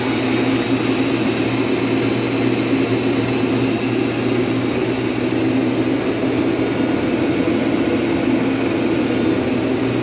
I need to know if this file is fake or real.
real